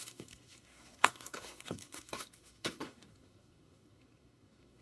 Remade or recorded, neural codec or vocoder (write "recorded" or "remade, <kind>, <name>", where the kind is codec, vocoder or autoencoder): remade, codec, SNAC